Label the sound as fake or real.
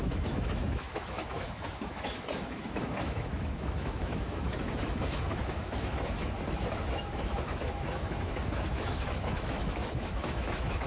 fake